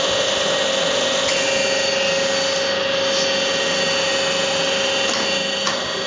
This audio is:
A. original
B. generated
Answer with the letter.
A